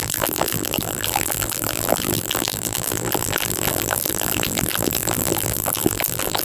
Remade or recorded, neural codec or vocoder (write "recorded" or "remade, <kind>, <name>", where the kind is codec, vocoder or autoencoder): remade, vocoder, BigVGAN v2